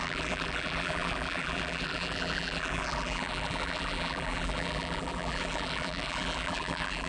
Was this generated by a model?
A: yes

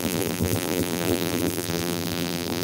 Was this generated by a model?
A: yes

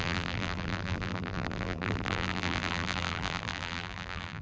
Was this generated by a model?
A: yes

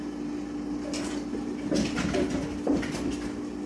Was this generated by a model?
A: no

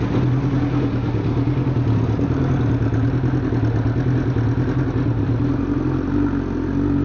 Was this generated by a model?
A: no